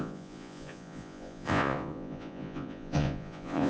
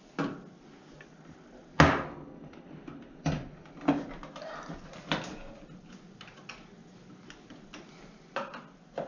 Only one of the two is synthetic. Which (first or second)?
first